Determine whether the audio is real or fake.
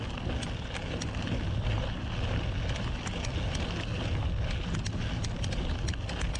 real